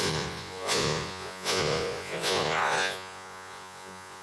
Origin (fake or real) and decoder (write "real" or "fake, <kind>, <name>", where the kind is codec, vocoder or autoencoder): fake, vocoder, Vocos